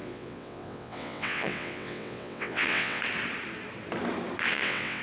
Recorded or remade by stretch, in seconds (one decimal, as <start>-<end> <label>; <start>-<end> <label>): 0.0-3.0 remade; 3.0-4.5 recorded; 4.5-5.0 remade